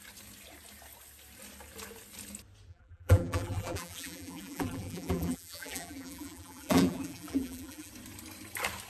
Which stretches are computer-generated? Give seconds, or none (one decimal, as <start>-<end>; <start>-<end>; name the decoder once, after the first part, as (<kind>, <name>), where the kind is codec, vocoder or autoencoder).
2.7-7.9 (vocoder, BigVGAN v2)